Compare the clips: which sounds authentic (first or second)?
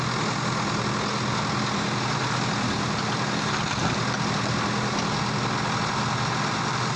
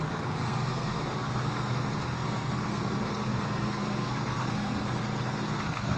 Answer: first